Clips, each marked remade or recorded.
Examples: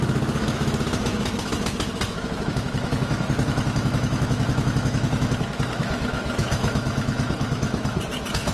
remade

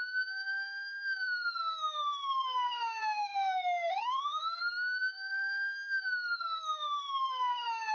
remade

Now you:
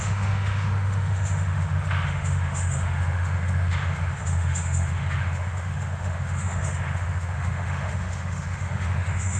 remade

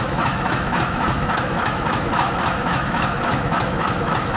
remade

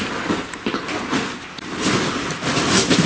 recorded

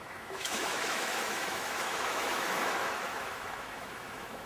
remade